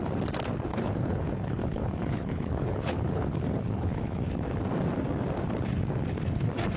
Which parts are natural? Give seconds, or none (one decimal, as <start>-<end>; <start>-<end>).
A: 0.0-0.7; 4.3-6.8